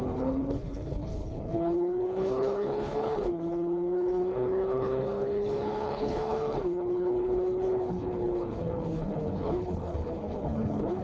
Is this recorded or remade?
remade